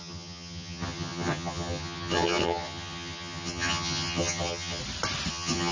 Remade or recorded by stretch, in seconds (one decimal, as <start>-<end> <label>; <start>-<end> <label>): 0.0-4.8 remade; 4.8-5.3 recorded; 5.3-5.7 remade